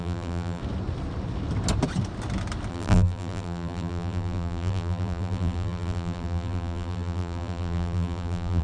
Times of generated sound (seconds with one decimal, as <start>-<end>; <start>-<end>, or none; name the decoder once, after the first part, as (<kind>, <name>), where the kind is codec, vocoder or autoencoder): 0.0-0.6 (vocoder, BigVGAN v2); 2.7-8.6

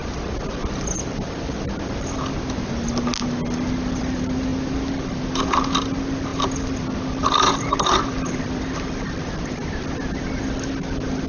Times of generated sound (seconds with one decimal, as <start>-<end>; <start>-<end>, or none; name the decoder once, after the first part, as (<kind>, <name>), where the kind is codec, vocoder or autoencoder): none

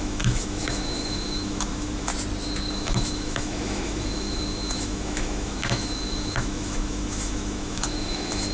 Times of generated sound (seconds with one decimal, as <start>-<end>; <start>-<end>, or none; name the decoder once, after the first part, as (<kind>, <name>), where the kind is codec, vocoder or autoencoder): 0.0-2.1 (autoencoder, DAC-VAE); 2.7-8.5

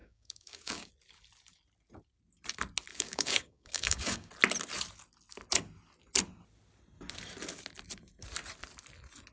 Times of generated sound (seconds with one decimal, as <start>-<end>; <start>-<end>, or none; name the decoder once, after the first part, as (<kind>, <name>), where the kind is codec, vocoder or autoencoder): 0.0-0.9 (codec, DAC); 2.9-4.3

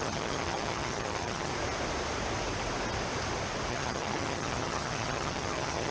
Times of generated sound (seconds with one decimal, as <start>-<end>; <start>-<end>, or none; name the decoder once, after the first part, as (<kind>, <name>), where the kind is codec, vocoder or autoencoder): 0.0-1.5 (vocoder, HiFi-GAN); 3.7-5.9

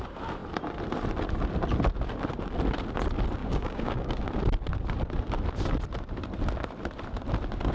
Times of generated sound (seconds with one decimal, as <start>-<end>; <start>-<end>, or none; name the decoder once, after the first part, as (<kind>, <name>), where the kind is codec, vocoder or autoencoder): 3.4-4.2 (codec, DAC)

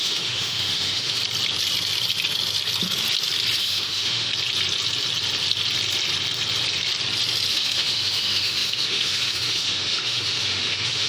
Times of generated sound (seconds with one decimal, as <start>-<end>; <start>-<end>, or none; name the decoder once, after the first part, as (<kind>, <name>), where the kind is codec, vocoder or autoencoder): 0.0-1.2 (autoencoder, DAC-VAE); 3.6-4.3; 7.5-11.1

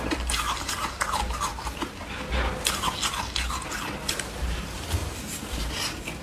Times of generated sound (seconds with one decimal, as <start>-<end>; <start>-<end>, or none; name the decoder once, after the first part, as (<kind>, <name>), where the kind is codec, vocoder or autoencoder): 0.0-1.5 (vocoder, BigVGAN v2); 4.1-6.2